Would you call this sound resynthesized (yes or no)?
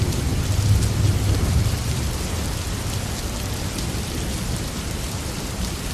no